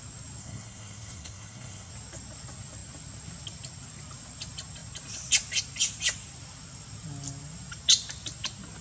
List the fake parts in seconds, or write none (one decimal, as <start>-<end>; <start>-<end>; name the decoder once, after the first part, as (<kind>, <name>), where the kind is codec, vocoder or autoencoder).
0.4-1.9 (codec, SNAC)